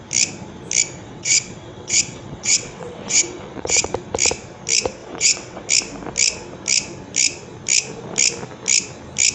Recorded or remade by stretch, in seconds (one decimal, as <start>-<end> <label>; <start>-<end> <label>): 0.0-1.0 recorded; 1.0-3.9 remade; 3.9-5.0 recorded; 5.0-5.7 remade; 5.7-9.3 recorded